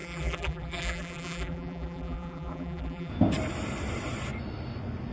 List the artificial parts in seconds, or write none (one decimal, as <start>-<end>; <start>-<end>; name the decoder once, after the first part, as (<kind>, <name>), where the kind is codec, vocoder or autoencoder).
0.0-3.1 (vocoder, BigVGAN v2)